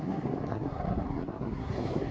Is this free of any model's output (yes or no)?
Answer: no